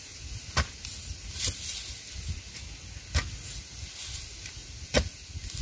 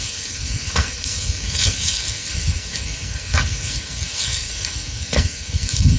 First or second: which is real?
first